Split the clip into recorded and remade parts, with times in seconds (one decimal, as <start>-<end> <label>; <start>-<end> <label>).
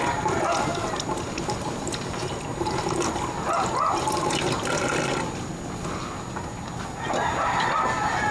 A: 0.0-8.3 recorded